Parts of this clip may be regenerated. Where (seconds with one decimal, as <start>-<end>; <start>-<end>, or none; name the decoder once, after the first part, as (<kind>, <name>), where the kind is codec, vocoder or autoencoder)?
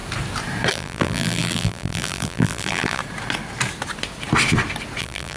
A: 0.7-3.0 (vocoder, BigVGAN v2); 5.0-5.4